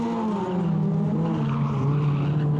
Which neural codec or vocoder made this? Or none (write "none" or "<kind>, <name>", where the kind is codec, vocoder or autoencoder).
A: none